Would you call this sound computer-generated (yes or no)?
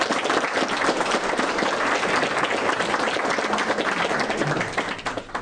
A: no